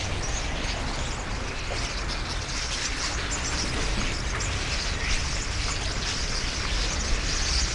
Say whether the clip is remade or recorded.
recorded